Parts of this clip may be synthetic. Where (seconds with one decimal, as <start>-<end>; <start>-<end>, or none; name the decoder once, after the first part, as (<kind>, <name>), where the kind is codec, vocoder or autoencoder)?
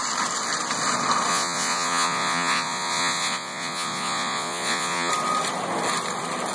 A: 1.3-5.1 (vocoder, Vocos)